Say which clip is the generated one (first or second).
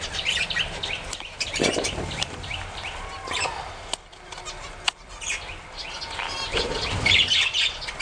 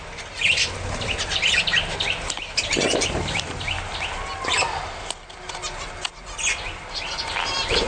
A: first